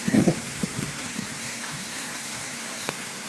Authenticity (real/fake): fake